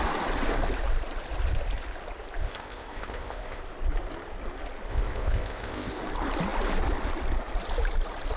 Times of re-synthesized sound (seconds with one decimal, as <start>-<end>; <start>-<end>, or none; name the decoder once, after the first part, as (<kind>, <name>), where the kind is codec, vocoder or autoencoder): 2.4-3.6 (codec, ZipCodec); 4.9-6.0